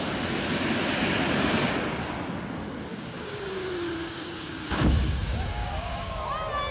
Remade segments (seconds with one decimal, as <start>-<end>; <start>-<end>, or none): 2.9-3.5; 4.0-6.3